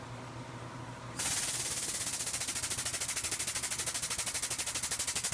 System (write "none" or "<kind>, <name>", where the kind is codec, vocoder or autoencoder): none